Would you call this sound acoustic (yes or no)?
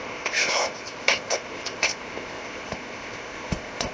no